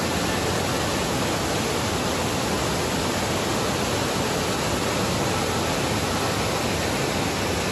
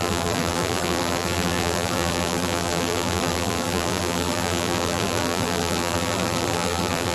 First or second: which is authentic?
first